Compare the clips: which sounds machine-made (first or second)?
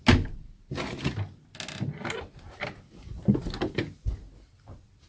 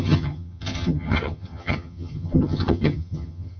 second